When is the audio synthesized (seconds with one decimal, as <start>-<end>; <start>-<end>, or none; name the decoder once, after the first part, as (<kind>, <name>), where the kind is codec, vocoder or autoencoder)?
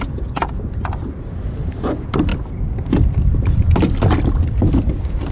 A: none